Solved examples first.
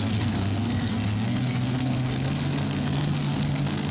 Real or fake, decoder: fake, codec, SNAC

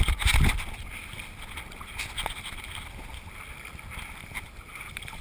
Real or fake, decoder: real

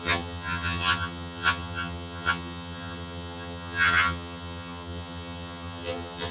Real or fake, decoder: fake, vocoder, HiFi-GAN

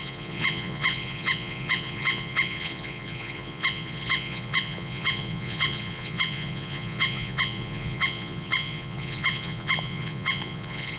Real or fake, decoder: fake, vocoder, Vocos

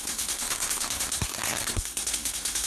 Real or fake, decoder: fake, codec, SNAC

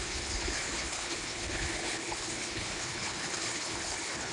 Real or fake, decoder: fake, codec, HILCodec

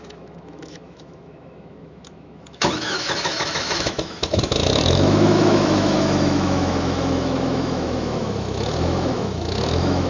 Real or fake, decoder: fake, autoencoder, DAC-VAE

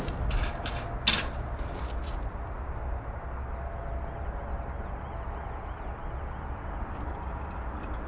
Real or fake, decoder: real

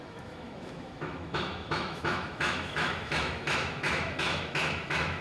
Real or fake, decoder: fake, autoencoder, DAC-VAE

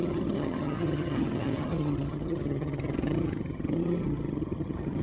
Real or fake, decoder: fake, vocoder, HiFi-GAN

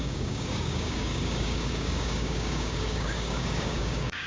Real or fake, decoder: fake, codec, DAC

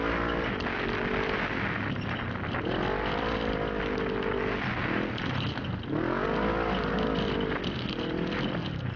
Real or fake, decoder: real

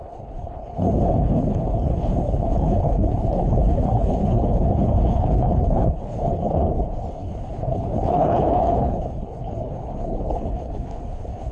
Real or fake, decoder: fake, codec, HILCodec